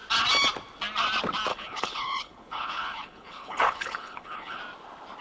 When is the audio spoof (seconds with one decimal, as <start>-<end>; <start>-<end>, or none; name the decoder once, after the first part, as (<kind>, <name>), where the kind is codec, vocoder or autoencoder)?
1.5-4.6 (codec, HILCodec)